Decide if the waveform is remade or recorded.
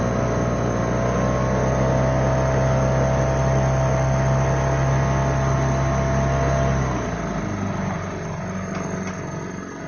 recorded